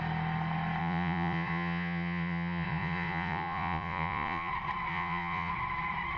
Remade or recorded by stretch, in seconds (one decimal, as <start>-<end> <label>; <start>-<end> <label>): 0.0-0.8 recorded; 0.8-4.5 remade; 4.5-4.9 recorded; 4.9-5.5 remade; 5.5-6.2 recorded